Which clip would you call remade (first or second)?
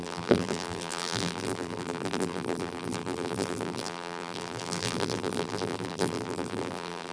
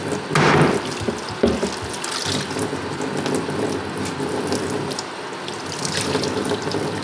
first